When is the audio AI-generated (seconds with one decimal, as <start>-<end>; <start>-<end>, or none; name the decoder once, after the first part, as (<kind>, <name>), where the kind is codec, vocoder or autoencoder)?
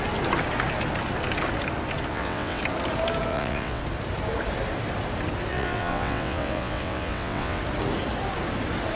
2.1-2.6 (vocoder, WaveNeXt); 3.3-3.8; 5.5-7.6